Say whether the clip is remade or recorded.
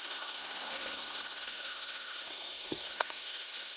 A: remade